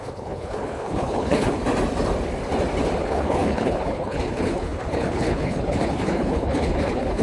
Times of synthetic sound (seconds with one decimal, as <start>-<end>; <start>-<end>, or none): 0.0-1.6; 3.0-7.2